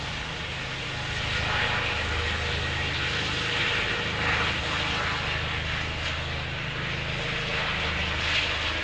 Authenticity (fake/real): real